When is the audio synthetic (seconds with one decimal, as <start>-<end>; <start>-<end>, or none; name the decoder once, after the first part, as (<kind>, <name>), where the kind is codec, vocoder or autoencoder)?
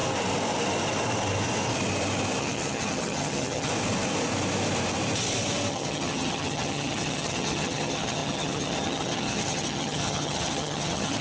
2.4-3.7 (vocoder, HiFi-GAN); 5.7-11.2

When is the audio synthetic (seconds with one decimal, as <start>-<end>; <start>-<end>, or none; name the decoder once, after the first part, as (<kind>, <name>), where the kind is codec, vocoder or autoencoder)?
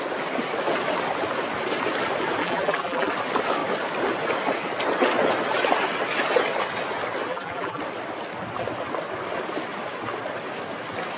2.4-3.1 (vocoder, BigVGAN v2); 7.3-7.8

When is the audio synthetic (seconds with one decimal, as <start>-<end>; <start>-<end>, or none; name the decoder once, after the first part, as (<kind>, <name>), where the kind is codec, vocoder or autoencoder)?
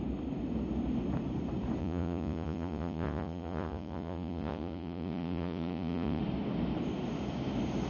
1.8-6.2 (vocoder, Vocos)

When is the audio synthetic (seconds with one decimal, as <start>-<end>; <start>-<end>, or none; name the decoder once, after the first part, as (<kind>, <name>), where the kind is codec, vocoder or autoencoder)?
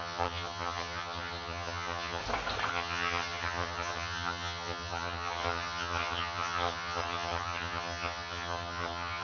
0.0-2.2 (vocoder, HiFi-GAN); 2.7-9.2